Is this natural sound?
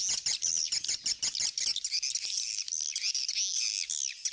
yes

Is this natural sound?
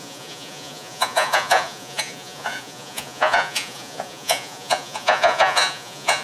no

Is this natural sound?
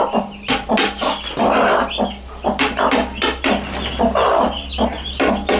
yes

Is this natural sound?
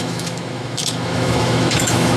no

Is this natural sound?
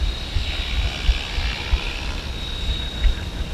yes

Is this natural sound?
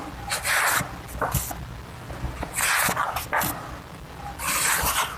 yes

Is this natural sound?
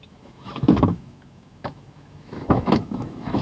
no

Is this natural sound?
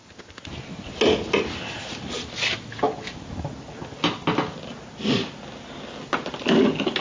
yes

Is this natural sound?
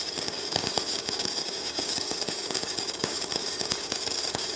no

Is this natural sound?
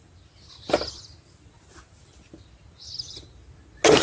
yes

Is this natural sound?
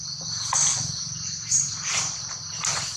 yes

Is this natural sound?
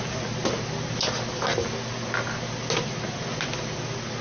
yes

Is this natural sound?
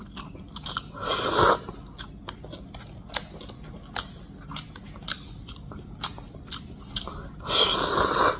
yes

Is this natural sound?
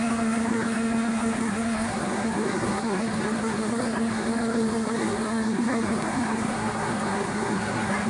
no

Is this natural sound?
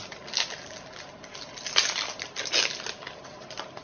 yes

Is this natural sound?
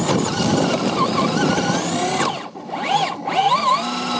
yes